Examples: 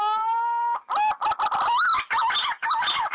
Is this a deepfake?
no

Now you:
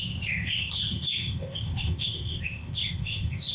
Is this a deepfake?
yes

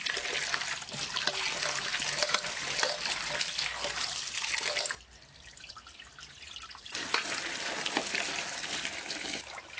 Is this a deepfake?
no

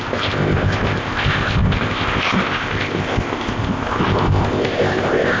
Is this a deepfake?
yes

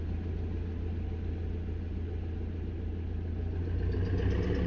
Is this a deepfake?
no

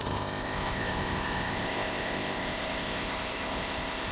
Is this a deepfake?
yes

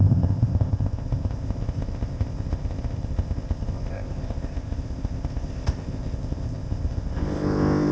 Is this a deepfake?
yes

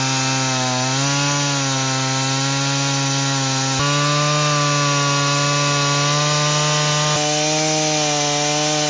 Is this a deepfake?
no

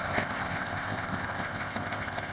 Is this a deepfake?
yes